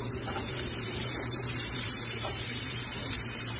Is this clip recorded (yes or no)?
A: no